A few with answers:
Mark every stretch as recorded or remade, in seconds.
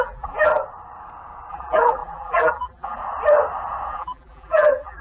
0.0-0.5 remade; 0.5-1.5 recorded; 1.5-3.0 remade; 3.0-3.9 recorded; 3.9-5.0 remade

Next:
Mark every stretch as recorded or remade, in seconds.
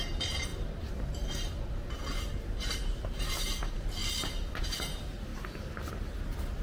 0.0-4.0 remade; 4.0-4.6 recorded; 4.6-5.3 remade; 5.3-5.9 recorded; 5.9-6.6 remade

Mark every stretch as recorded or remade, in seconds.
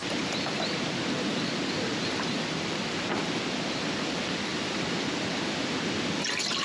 0.0-6.6 remade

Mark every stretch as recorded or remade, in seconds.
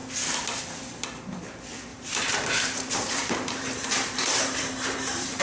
0.0-1.9 recorded; 1.9-5.4 remade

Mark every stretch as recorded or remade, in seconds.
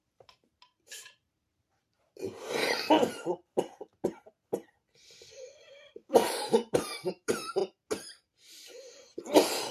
0.0-3.9 remade; 3.9-5.4 recorded; 5.4-7.6 remade; 7.6-8.9 recorded; 8.9-9.7 remade